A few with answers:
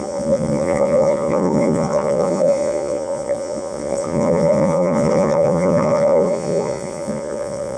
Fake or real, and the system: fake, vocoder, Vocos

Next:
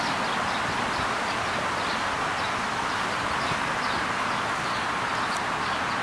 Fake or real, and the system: real